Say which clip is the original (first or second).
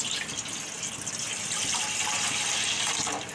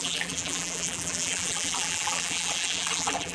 first